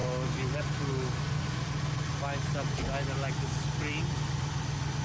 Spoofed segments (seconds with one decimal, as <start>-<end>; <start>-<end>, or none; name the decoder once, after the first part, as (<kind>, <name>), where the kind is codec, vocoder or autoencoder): none